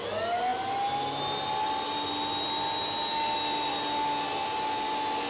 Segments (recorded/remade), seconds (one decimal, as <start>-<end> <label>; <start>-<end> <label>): 0.0-5.3 recorded